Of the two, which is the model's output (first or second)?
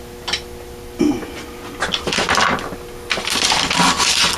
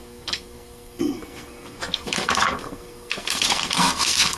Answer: second